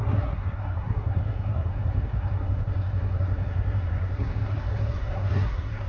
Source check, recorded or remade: remade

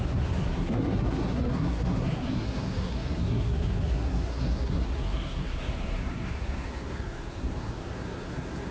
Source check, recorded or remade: remade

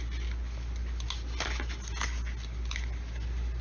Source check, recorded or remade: recorded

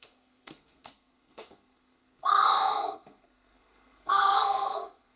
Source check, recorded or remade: remade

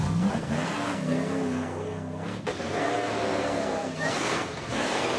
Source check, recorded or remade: remade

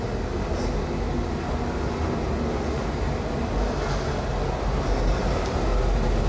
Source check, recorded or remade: recorded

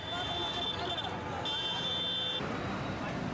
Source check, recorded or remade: recorded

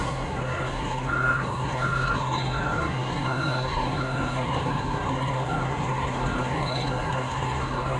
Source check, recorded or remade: remade